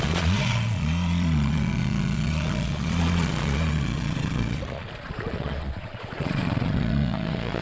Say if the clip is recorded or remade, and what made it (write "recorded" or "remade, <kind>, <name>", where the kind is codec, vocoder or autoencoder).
remade, vocoder, Vocos